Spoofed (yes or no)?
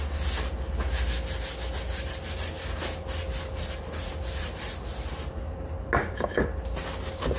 no